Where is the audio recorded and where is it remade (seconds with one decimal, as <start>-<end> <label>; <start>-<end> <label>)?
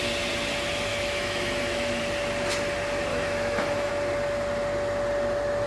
0.0-0.9 recorded; 0.9-2.0 remade; 2.0-3.1 recorded; 3.1-3.9 remade; 3.9-5.7 recorded